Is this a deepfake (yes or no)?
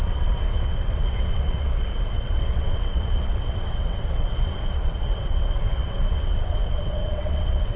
yes